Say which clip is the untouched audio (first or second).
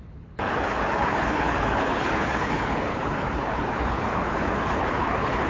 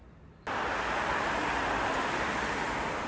second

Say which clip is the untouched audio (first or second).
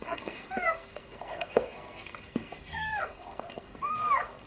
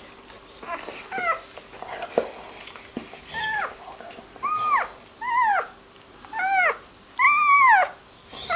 second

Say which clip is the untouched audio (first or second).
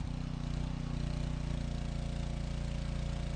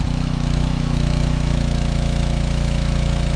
first